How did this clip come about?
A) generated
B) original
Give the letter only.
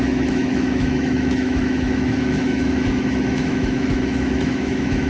A